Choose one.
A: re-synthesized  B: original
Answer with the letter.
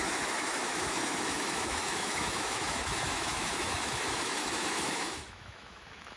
A